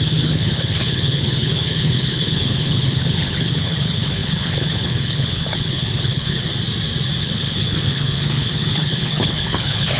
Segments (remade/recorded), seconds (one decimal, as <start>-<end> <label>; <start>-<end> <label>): 0.0-6.5 remade; 6.5-7.2 recorded; 7.2-10.0 remade